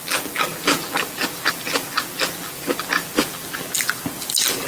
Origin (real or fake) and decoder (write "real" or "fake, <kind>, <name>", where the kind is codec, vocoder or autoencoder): fake, vocoder, BigVGAN v2